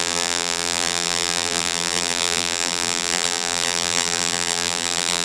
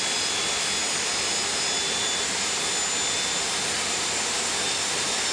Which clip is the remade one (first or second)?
first